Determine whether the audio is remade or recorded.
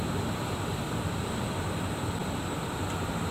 recorded